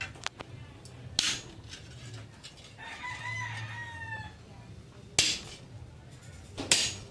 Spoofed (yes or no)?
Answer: no